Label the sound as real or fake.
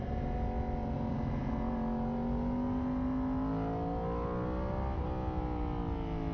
real